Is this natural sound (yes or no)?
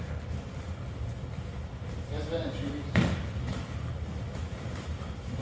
yes